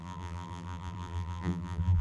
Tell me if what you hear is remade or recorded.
remade